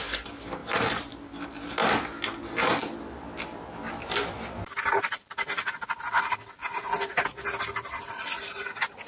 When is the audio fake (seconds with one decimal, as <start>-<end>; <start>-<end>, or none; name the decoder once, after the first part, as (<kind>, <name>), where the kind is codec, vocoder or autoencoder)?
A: none